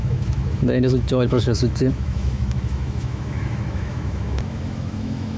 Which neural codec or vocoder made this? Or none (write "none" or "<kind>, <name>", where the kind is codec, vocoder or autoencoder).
autoencoder, DAC-VAE